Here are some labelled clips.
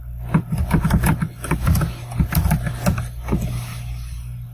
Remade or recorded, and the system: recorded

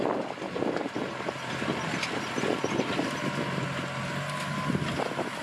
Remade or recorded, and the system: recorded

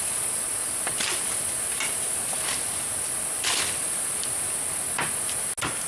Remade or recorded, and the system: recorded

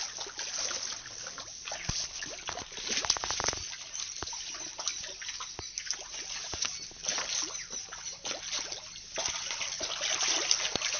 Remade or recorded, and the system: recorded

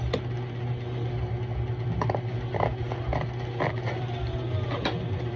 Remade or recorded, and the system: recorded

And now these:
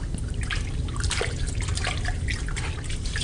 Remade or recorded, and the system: recorded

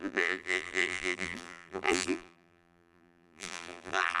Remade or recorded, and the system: remade, vocoder, BigVGAN v2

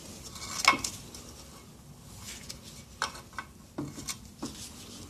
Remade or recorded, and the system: recorded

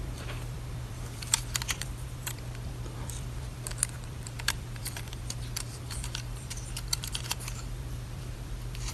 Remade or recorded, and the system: remade, vocoder, BigVGAN v2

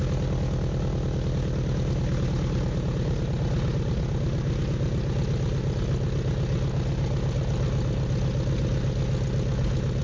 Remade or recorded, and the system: recorded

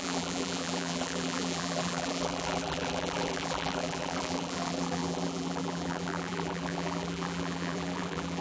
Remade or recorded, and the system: remade, vocoder, BigVGAN v2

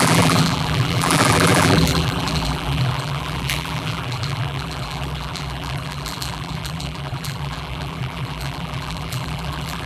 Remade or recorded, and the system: remade, vocoder, BigVGAN v2